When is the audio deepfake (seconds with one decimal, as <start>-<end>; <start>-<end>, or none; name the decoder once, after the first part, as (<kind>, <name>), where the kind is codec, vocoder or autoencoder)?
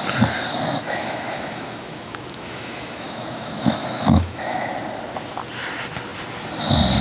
0.5-4.7 (autoencoder, DAC-VAE)